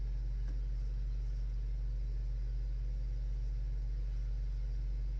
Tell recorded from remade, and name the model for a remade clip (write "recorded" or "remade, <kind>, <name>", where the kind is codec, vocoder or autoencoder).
recorded